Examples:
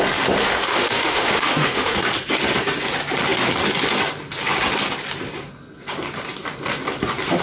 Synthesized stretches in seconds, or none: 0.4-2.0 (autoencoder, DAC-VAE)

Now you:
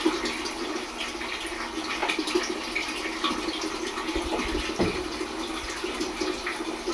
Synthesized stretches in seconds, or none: none

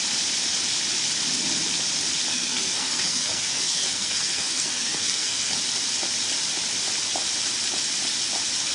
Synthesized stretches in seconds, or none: 2.3-5.6 (codec, SNAC)

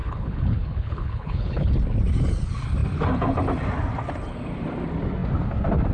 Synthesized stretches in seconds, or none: 0.0-1.7 (codec, HILCodec)